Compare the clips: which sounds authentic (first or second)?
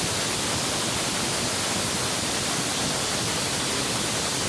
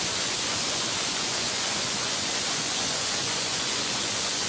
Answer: first